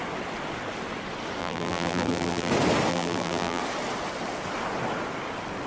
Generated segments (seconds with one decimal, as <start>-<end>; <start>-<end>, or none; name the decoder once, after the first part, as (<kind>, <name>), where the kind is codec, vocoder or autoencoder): 1.4-2.5 (vocoder, BigVGAN v2); 2.9-3.6